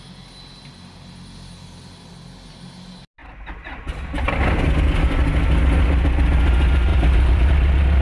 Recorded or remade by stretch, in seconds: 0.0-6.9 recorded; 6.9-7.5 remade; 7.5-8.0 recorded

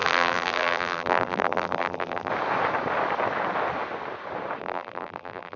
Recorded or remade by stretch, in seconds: 0.0-2.3 remade; 2.3-4.6 recorded; 4.6-5.6 remade

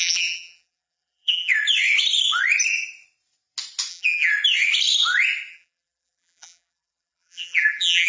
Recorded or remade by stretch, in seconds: 0.0-1.5 remade; 1.5-3.9 recorded; 3.9-4.3 remade; 4.3-5.5 recorded; 5.5-8.1 remade

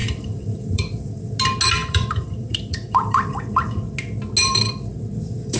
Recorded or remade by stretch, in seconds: 0.0-1.2 remade; 1.2-1.8 recorded; 1.8-3.4 remade; 3.4-4.9 recorded; 4.9-5.6 remade

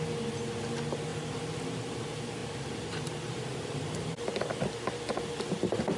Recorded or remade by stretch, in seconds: 0.0-1.1 recorded; 1.1-2.0 remade; 2.0-2.4 recorded; 2.4-5.0 remade; 5.0-6.0 recorded

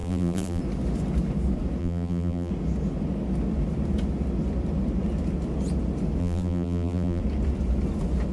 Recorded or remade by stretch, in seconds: 0.0-0.6 remade; 0.6-1.8 recorded; 1.8-2.5 remade; 2.5-6.2 recorded; 6.2-7.2 remade; 7.2-8.3 recorded

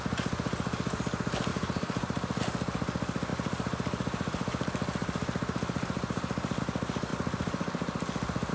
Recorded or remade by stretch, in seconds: 0.0-1.5 recorded; 1.5-2.4 remade; 2.4-3.3 recorded; 3.3-6.6 remade; 6.6-8.5 recorded

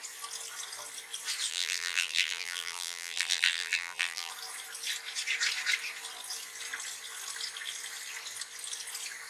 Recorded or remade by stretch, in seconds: 0.0-1.5 recorded; 1.5-4.3 remade; 4.3-9.3 recorded